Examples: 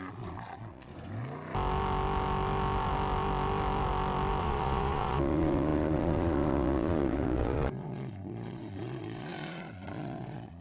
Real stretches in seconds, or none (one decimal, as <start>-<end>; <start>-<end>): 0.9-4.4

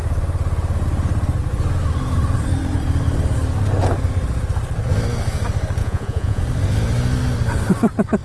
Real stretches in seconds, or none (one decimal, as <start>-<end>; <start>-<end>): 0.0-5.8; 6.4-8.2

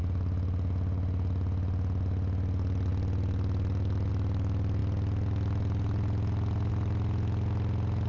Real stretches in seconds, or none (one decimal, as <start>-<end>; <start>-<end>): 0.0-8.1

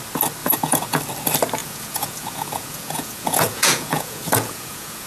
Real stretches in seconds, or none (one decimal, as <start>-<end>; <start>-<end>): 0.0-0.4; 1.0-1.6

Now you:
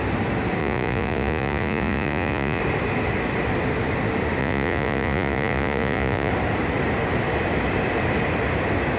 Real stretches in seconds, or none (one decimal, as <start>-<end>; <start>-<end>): 0.0-0.6; 2.6-4.4; 6.3-9.0

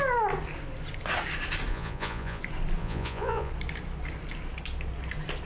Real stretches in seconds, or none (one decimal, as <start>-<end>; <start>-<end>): 0.0-1.7; 2.4-2.8; 3.5-5.5